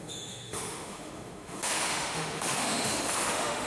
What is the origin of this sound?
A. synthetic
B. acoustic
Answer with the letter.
A